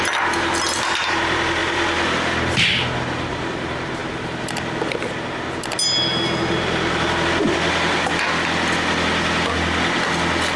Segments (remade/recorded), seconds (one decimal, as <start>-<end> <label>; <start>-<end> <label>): 0.0-10.6 recorded